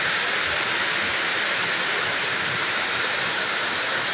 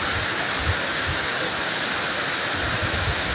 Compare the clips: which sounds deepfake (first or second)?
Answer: first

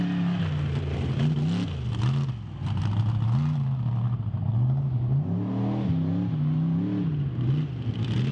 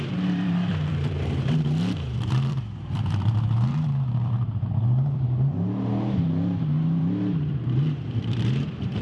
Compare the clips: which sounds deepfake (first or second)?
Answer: second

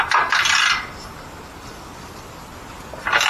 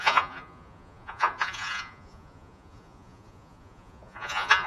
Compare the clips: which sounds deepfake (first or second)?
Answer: second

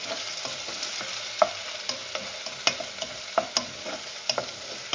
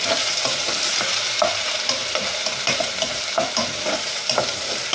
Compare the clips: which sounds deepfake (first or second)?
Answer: second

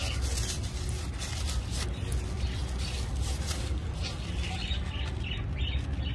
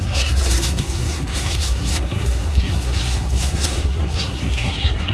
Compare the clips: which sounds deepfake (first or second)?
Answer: second